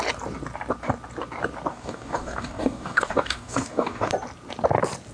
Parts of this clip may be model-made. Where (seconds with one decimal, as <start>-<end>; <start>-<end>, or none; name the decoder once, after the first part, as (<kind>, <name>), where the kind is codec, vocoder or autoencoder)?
1.7-4.1 (codec, DAC)